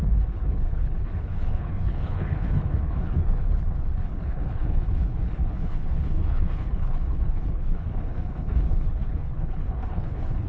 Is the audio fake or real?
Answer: fake